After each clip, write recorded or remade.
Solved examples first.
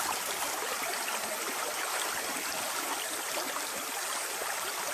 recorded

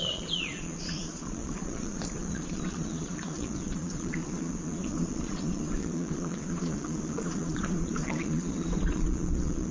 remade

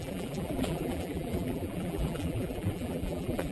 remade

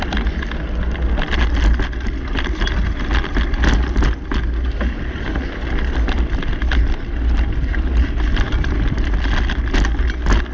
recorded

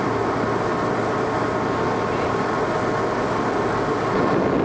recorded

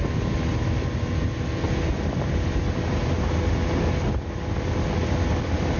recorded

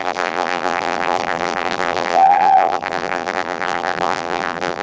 remade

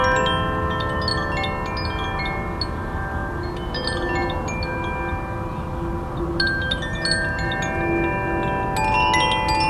recorded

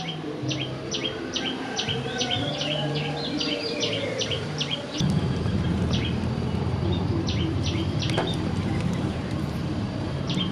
remade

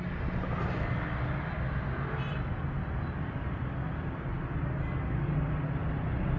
recorded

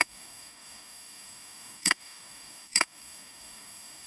remade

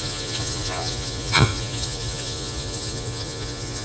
remade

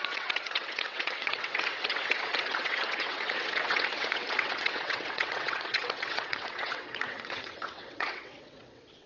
remade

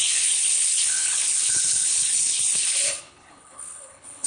remade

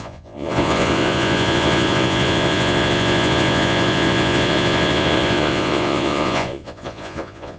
remade